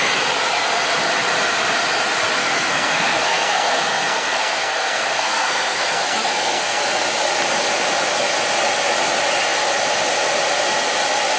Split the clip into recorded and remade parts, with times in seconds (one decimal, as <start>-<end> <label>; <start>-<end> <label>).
0.0-2.4 recorded; 2.4-6.8 remade; 6.8-11.4 recorded